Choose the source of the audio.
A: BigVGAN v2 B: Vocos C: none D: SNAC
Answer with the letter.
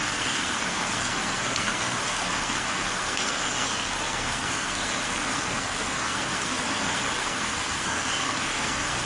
D